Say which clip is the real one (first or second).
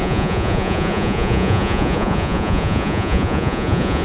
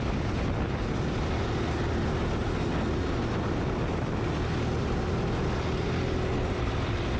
second